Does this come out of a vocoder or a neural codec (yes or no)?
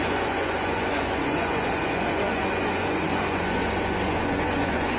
yes